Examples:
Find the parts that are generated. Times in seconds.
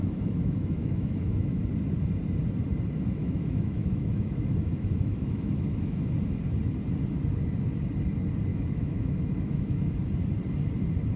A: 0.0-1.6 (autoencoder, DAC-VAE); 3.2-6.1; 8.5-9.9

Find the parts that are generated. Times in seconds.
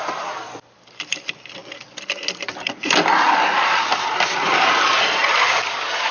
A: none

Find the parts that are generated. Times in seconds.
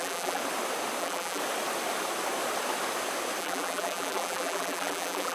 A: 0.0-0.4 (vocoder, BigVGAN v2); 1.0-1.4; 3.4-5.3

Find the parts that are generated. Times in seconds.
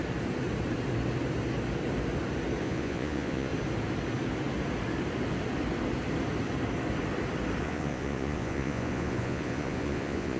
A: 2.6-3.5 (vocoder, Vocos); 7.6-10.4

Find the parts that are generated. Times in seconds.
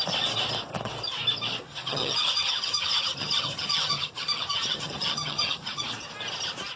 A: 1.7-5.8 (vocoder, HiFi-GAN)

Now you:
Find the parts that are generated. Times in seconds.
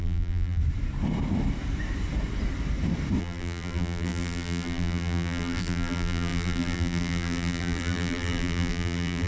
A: 0.0-0.6 (vocoder, BigVGAN v2); 3.2-9.3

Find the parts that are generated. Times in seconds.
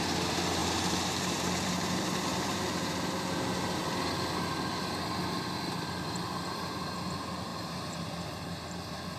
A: 0.6-3.1 (vocoder, BigVGAN v2); 7.5-9.2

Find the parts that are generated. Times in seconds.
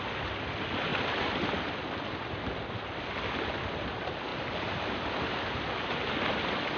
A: none